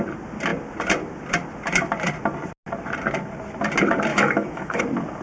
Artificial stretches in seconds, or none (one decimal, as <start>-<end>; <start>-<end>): 4.1-4.8